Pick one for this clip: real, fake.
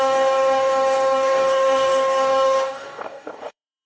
fake